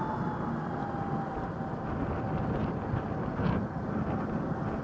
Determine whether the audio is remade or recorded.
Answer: recorded